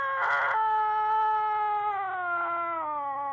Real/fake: real